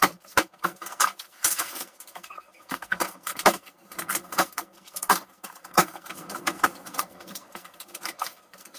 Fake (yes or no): yes